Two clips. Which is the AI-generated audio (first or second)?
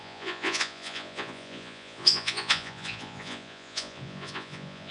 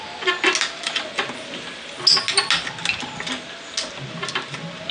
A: first